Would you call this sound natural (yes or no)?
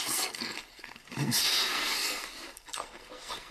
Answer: no